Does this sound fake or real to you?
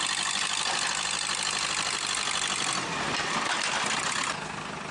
real